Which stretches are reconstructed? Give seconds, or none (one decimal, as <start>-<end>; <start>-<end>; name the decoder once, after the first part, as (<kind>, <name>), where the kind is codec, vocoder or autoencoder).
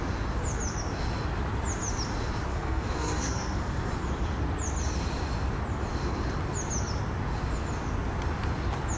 2.5-3.9 (codec, SNAC)